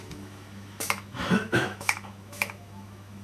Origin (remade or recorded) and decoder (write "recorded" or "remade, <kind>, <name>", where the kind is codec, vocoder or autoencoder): remade, autoencoder, DAC-VAE